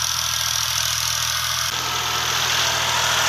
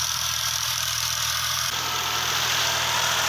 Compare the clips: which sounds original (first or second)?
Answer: first